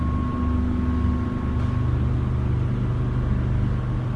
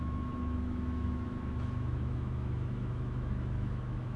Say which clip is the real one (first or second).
first